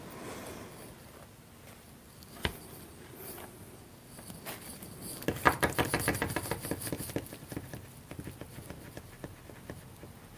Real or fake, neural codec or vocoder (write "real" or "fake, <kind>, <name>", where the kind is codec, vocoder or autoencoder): real